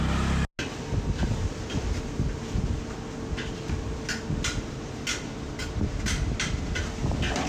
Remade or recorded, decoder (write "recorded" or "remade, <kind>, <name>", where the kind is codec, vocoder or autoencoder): recorded